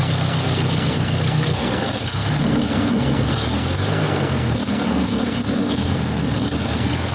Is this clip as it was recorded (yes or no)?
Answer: no